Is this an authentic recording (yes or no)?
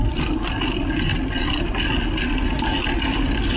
yes